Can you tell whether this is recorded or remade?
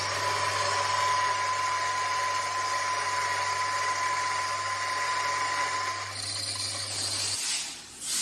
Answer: recorded